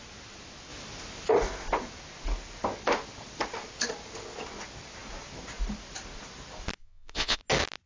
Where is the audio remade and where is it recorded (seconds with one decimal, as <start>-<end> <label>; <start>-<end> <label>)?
0.0-6.8 recorded; 6.8-7.4 remade; 7.4-7.9 recorded